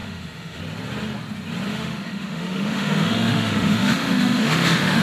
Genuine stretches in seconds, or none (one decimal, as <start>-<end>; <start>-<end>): 0.6-1.7